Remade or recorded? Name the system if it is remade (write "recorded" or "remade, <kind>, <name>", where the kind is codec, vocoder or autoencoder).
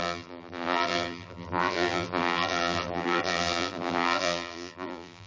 remade, vocoder, BigVGAN v2